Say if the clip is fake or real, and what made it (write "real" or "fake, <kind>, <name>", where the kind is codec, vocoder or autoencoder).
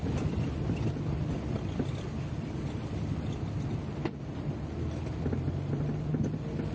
real